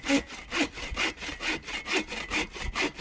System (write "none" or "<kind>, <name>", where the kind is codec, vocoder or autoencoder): none